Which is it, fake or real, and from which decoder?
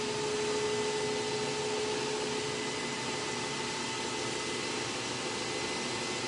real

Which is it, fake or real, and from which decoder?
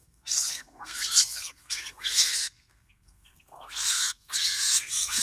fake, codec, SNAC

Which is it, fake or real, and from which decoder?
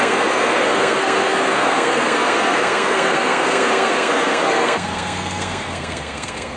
fake, codec, SNAC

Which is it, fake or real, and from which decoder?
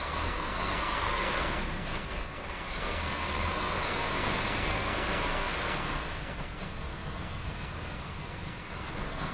fake, codec, SNAC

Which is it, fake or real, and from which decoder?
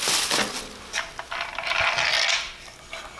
real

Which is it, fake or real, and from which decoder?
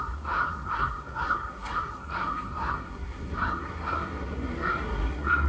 fake, codec, SNAC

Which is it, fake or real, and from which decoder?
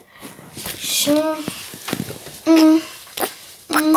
real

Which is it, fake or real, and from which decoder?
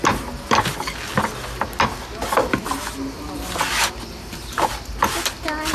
real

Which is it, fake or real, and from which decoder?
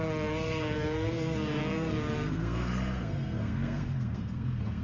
fake, codec, SNAC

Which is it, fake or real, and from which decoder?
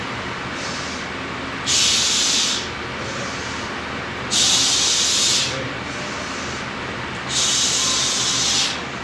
real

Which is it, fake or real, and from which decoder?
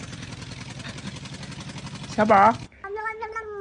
real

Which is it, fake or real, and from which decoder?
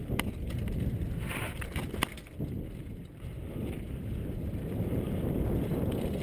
real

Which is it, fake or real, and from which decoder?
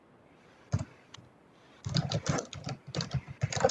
real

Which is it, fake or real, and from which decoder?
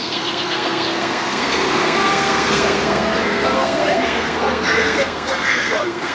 fake, codec, SNAC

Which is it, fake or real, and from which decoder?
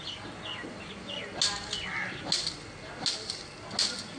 real